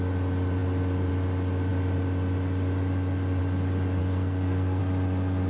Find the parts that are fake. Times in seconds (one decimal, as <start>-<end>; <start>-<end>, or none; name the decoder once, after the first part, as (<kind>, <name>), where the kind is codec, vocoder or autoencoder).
4.0-4.8 (codec, SNAC)